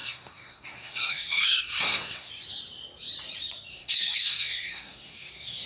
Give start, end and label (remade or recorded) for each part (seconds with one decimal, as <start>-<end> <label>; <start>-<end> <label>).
0.0-2.3 remade; 2.3-3.7 recorded; 3.7-5.7 remade